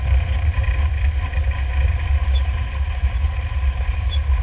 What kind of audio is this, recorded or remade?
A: recorded